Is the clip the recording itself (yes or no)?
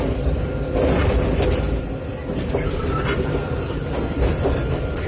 yes